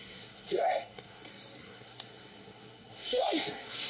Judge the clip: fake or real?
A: fake